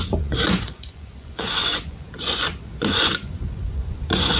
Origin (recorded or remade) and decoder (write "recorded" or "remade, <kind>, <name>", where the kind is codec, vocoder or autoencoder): remade, vocoder, Vocos